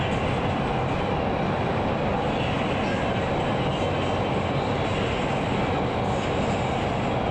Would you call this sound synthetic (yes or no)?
no